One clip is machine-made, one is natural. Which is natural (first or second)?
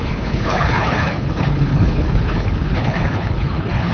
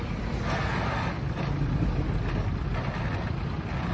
second